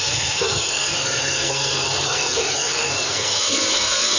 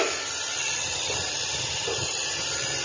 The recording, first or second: second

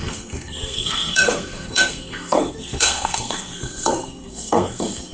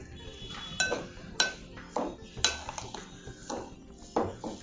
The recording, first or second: second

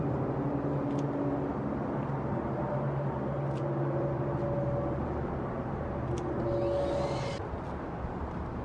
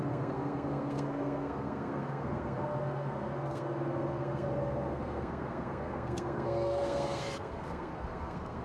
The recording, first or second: first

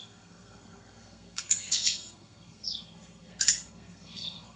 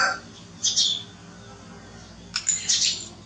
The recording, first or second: second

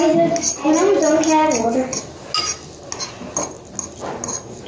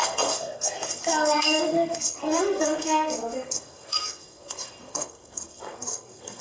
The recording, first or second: first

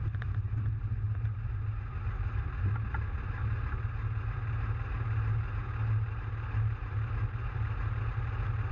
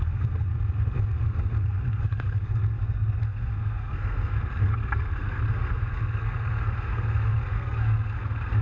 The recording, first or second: first